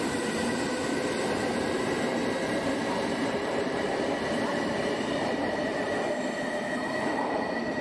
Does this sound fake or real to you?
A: fake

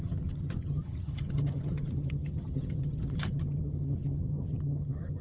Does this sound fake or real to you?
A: fake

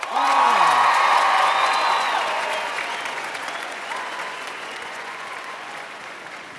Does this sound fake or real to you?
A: fake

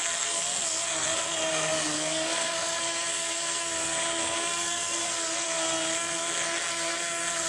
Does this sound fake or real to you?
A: fake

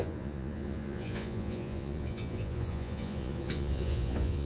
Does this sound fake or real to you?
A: fake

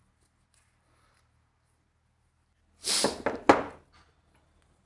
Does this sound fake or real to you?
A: real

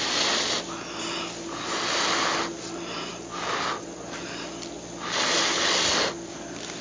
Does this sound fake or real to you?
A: real